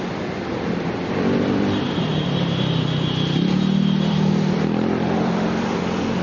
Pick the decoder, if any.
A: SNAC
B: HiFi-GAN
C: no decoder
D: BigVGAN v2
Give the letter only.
D